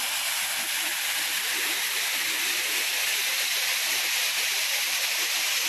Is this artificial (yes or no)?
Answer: no